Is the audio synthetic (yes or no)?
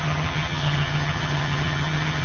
yes